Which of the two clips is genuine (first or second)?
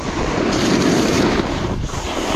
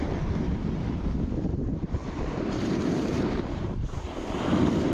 first